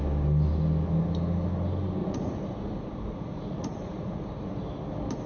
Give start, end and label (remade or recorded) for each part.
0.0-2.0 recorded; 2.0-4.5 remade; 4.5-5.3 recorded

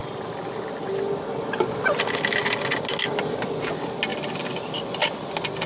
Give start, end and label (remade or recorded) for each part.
0.0-5.7 recorded

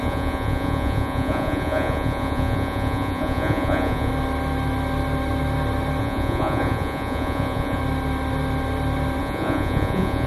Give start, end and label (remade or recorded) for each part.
0.0-4.1 remade; 4.1-6.0 recorded; 6.0-7.8 remade; 7.8-9.2 recorded; 9.2-10.3 remade

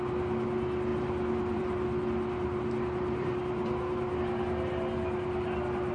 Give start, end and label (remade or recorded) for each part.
0.0-0.9 recorded; 0.9-4.2 remade; 4.2-5.9 recorded

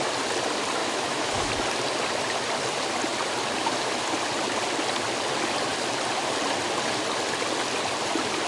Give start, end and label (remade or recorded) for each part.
0.0-0.8 recorded; 0.8-1.5 remade; 1.5-8.5 recorded